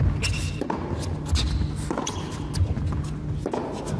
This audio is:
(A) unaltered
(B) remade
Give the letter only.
A